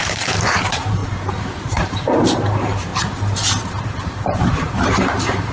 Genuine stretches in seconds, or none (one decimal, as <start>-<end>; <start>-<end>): 2.9-3.6